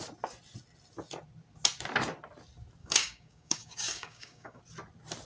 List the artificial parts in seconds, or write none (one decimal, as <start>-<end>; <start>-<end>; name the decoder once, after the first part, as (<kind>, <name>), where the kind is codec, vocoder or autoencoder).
2.8-4.6 (codec, DAC)